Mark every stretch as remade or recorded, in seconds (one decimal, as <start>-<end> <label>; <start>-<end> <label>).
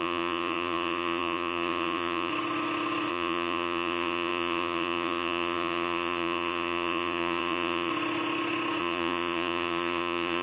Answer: 0.0-2.3 remade; 2.3-3.1 recorded; 3.1-7.9 remade; 7.9-8.8 recorded; 8.8-10.4 remade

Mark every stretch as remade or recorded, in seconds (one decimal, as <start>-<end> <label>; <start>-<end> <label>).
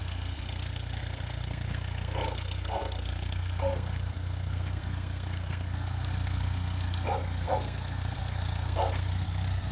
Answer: 0.0-9.7 remade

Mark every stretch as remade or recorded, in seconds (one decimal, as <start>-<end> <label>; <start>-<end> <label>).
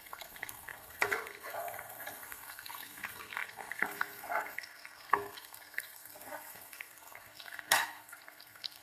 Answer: 0.0-8.8 remade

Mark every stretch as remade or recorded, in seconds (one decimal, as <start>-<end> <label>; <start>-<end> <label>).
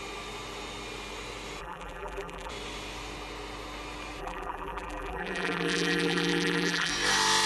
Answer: 0.0-1.6 recorded; 1.6-2.5 remade; 2.5-4.2 recorded; 4.2-6.9 remade; 6.9-7.5 recorded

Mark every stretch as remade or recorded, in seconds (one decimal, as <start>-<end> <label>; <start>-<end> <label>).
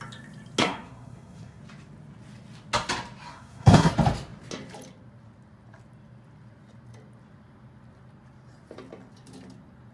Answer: 0.0-0.6 recorded; 0.6-1.6 remade; 1.6-3.3 recorded; 3.3-3.9 remade; 3.9-9.9 recorded